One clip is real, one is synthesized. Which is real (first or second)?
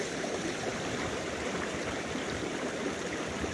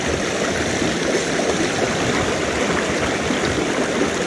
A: second